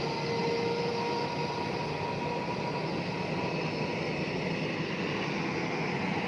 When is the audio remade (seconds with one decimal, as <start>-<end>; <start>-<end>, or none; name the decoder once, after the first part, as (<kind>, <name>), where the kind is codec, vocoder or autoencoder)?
none